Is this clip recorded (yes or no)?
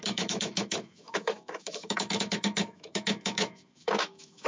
no